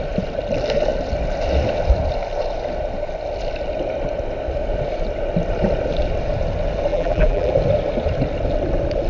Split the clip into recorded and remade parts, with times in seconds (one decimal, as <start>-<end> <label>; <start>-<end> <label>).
0.0-6.9 recorded; 6.9-7.5 remade; 7.5-9.1 recorded